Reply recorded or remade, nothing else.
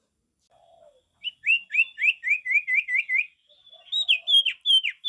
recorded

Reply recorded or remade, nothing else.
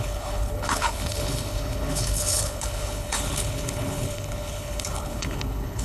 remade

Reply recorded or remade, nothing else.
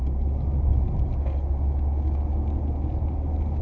recorded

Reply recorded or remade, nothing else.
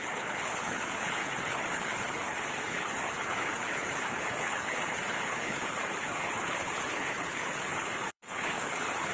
remade